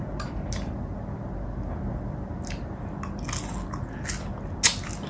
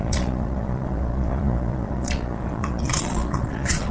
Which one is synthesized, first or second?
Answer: second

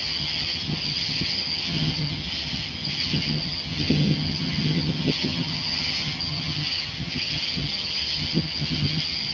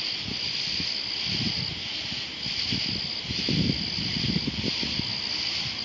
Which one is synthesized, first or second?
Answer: first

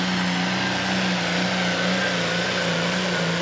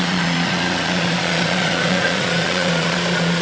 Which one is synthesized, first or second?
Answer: second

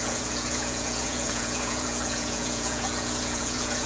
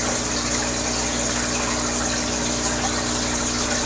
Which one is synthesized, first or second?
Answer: first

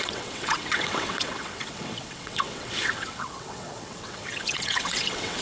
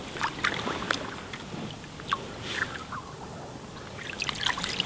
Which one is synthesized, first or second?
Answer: first